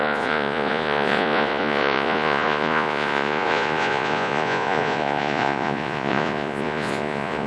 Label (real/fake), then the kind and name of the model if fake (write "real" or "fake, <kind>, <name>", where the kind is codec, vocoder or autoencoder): fake, vocoder, Vocos